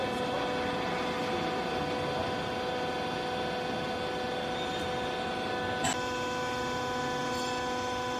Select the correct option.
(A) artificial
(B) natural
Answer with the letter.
B